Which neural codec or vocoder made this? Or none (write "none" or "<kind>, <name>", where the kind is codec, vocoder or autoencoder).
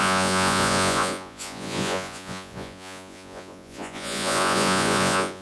vocoder, Vocos